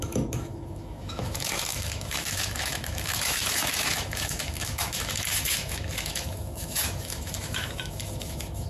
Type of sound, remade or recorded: remade